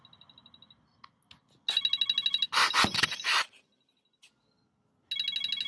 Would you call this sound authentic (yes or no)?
yes